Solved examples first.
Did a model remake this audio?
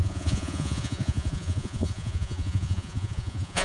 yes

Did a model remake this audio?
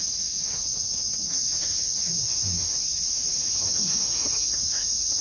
yes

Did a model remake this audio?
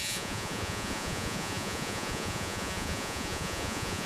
yes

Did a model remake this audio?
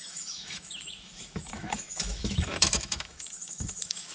yes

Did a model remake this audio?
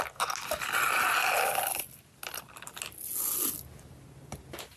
no